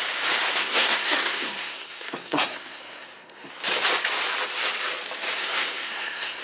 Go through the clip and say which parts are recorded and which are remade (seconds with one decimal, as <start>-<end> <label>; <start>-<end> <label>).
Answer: 0.0-0.6 recorded; 0.6-3.5 remade; 3.5-5.4 recorded; 5.4-6.4 remade